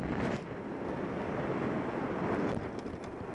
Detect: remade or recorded recorded